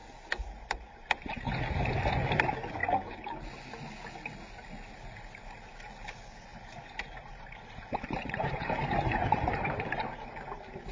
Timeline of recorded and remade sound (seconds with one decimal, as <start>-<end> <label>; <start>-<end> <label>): 0.0-6.5 recorded; 6.5-9.9 remade; 9.9-10.9 recorded

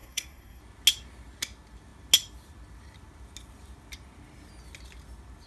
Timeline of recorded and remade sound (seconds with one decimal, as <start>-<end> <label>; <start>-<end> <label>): 0.0-0.6 remade; 0.6-5.5 recorded

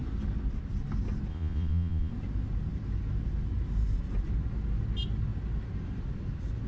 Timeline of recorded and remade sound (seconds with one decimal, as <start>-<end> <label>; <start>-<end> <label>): 0.0-1.3 recorded; 1.3-2.1 remade; 2.1-6.7 recorded